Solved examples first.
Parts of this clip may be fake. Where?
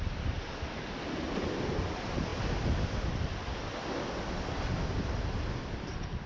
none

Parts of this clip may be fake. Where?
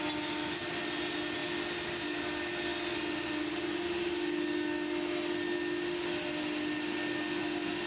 none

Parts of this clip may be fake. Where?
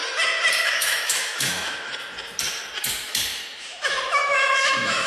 0.6-1.9 (autoencoder, DAC-VAE); 2.9-5.1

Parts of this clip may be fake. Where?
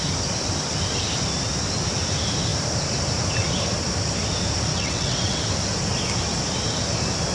4.7-5.4 (vocoder, WaveNeXt)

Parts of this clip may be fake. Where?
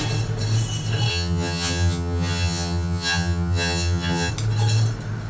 1.1-4.3 (vocoder, HiFi-GAN)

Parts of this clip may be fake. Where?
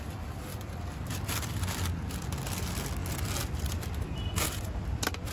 0.5-1.5 (vocoder, BigVGAN v2)